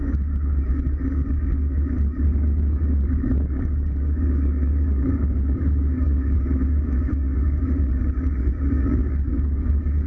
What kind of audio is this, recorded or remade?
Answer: remade